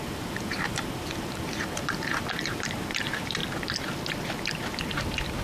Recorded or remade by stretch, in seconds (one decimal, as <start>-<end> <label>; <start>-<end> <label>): 0.0-3.4 remade; 3.4-4.8 recorded; 4.8-5.4 remade